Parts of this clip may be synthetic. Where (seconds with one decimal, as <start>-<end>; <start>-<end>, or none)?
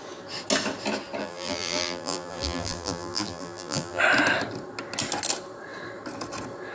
1.2-4.0